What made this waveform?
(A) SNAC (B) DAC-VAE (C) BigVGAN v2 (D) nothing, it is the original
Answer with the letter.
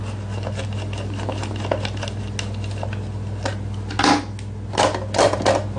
D